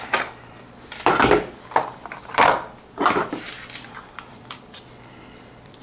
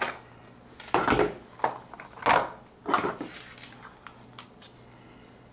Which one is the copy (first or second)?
first